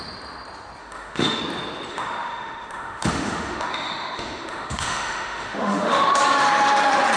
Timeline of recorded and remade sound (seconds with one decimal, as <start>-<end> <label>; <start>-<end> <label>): 0.0-0.8 recorded; 0.8-1.4 remade; 1.4-1.9 recorded; 1.9-6.2 remade; 6.2-7.2 recorded